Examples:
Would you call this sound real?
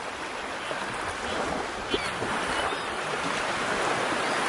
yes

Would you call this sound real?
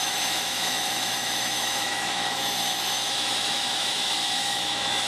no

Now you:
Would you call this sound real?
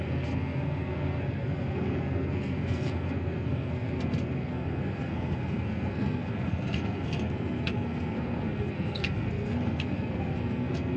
no